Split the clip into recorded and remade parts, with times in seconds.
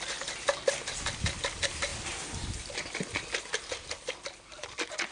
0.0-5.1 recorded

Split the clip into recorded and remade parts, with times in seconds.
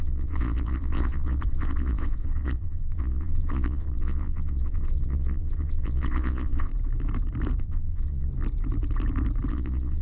0.0-6.7 remade; 6.7-7.6 recorded; 7.6-8.3 remade; 8.3-9.5 recorded; 9.5-10.0 remade